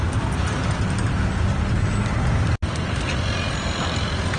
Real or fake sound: real